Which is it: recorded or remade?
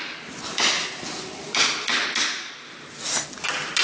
recorded